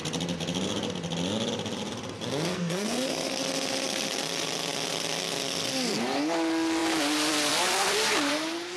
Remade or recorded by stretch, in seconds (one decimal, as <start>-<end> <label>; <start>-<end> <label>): 0.0-2.5 recorded; 2.5-3.3 remade; 3.3-8.8 recorded